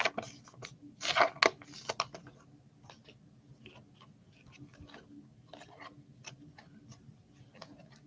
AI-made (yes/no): no